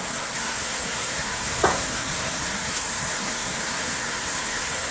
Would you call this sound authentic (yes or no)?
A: no